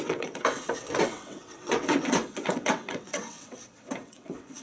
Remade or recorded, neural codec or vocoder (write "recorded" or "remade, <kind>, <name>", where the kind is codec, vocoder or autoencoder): remade, vocoder, WaveNeXt